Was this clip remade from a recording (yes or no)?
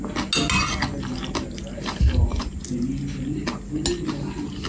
no